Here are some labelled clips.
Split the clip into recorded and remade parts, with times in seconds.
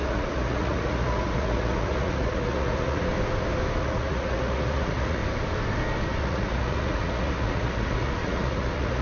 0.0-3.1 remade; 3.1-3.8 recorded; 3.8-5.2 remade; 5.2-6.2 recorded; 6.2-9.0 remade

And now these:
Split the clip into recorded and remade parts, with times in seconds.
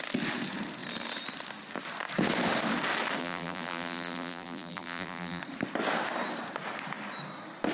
0.0-3.2 recorded; 3.2-5.4 remade; 5.4-7.7 recorded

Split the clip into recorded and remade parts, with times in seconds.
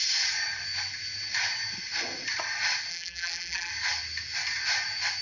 0.0-2.9 recorded; 2.9-3.7 remade; 3.7-5.2 recorded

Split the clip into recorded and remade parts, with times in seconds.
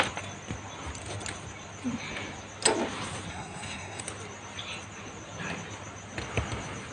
0.0-3.3 recorded; 3.3-4.0 remade; 4.0-6.9 recorded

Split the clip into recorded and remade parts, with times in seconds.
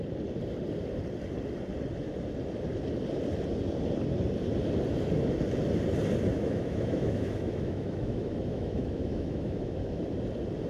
0.0-6.3 recorded; 6.3-10.0 remade; 10.0-10.7 recorded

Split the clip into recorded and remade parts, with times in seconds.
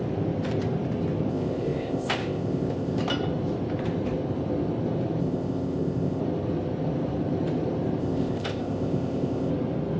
0.0-1.3 recorded; 1.3-3.0 remade; 3.0-5.2 recorded; 5.2-6.2 remade; 6.2-8.0 recorded; 8.0-9.5 remade; 9.5-10.0 recorded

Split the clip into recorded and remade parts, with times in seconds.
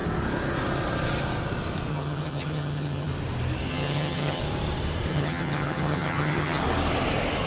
0.0-1.9 recorded; 1.9-3.1 remade; 3.1-3.7 recorded; 3.7-4.4 remade; 4.4-5.1 recorded; 5.1-6.6 remade; 6.6-7.5 recorded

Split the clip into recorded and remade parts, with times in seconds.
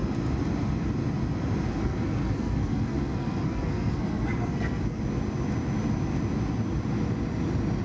0.0-1.8 recorded; 1.8-5.0 remade; 5.0-7.8 recorded